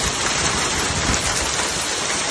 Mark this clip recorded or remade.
recorded